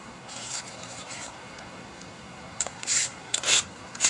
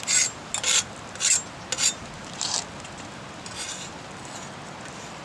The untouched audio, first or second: second